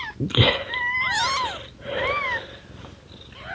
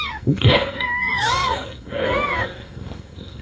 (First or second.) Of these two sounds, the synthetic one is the second